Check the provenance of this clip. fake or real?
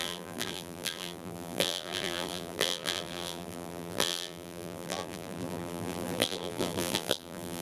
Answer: fake